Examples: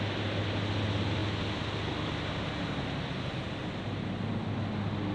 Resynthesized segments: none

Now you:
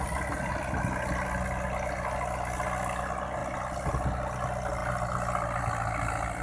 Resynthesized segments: none